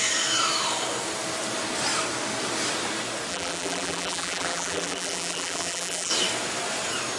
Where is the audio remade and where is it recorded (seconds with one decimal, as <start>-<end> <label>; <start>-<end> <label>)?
0.0-3.3 recorded; 3.3-6.1 remade; 6.1-7.2 recorded